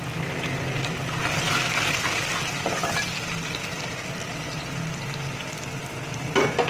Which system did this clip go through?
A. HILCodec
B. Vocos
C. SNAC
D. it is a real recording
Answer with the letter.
D